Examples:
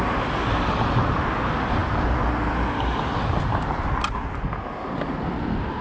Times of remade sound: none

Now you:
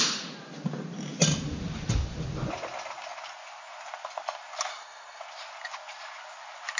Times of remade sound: 4.7-5.2

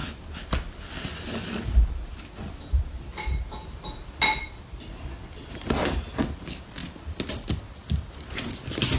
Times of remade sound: none

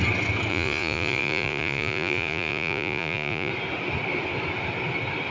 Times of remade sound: 0.5-3.5

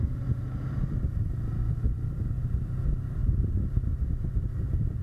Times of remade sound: 0.0-1.3; 1.9-5.0

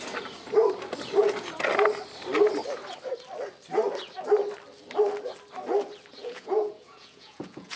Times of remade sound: 6.2-7.8